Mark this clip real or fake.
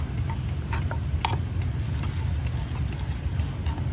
real